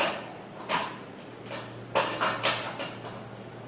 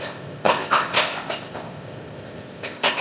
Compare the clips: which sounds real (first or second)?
first